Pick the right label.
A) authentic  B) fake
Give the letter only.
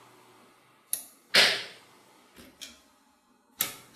A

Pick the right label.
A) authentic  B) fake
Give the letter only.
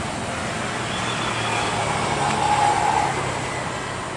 A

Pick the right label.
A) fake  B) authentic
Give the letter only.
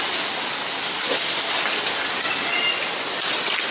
B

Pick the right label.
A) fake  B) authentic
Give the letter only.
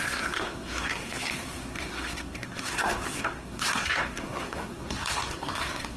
A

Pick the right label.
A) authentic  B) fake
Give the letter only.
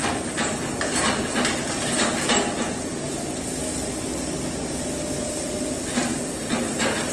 A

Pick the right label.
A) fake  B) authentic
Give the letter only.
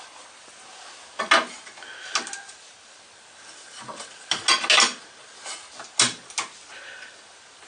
B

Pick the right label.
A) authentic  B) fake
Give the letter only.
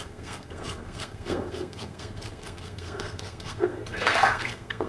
B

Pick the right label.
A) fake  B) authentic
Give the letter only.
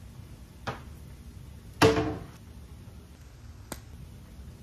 B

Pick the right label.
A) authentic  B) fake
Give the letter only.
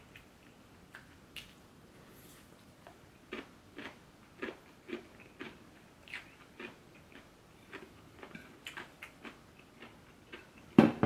A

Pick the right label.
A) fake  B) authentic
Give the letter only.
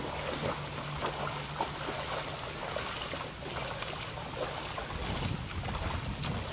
B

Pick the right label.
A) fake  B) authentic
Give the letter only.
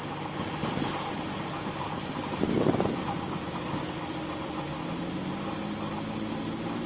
B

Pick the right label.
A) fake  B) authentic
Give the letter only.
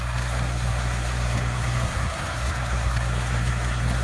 A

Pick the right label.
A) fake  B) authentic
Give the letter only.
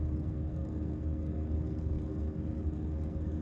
A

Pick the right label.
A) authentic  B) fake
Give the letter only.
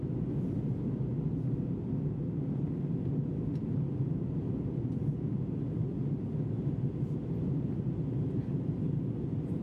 A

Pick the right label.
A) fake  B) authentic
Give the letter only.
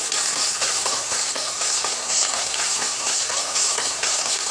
A